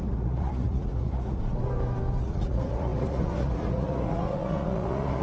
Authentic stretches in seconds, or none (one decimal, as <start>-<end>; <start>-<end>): 1.4-2.2

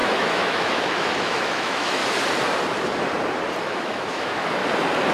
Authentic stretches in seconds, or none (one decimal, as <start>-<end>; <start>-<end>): 2.0-3.6; 4.6-5.1

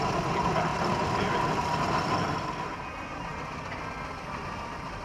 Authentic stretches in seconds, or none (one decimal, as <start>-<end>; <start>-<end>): 0.0-0.7; 1.3-3.3; 3.8-5.0

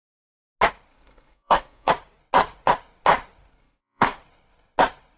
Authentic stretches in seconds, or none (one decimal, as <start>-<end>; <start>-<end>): 0.0-0.9; 1.9-3.5; 4.2-5.2